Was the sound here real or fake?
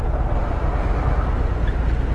real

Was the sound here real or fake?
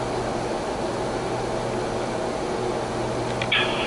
real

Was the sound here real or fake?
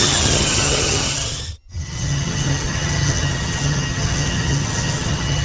fake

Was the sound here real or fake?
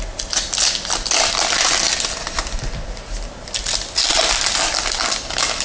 real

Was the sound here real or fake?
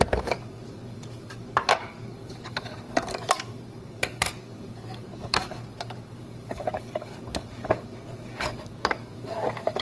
fake